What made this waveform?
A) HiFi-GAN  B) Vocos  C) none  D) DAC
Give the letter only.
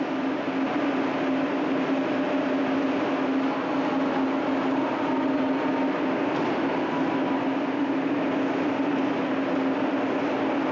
C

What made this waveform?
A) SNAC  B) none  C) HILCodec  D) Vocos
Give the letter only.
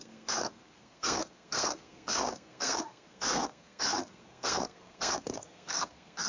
A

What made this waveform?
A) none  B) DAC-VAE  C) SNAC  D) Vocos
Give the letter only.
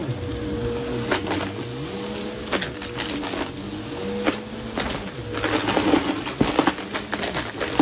A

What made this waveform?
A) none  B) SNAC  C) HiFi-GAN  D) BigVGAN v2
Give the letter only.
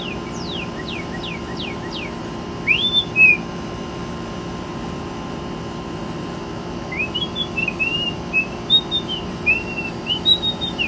D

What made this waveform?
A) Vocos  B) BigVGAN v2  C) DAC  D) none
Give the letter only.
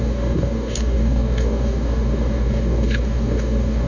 C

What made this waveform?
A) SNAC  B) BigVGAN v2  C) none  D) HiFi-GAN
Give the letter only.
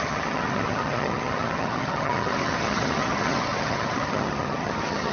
D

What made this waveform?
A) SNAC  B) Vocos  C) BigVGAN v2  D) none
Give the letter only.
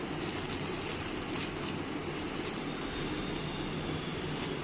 D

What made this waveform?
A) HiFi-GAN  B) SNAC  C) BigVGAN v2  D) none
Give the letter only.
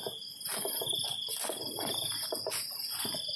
D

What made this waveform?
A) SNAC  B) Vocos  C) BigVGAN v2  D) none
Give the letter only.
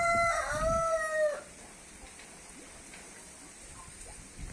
D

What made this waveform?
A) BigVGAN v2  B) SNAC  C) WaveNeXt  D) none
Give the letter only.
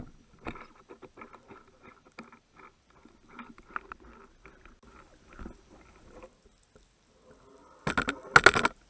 D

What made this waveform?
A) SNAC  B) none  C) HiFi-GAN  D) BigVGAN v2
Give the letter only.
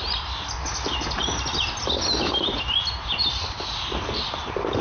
B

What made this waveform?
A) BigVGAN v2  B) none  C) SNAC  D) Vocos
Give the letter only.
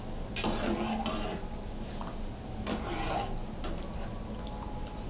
B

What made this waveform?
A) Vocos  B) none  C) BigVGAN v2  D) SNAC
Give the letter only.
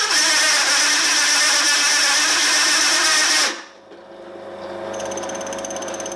B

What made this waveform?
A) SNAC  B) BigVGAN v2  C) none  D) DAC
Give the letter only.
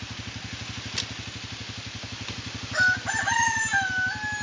C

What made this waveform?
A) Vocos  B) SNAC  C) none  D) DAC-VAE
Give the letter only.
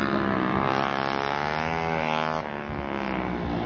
C